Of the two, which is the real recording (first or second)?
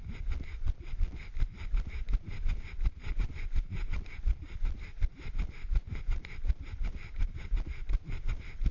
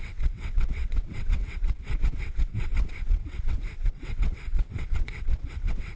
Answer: first